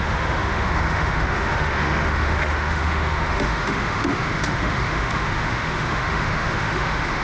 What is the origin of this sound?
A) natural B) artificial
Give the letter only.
B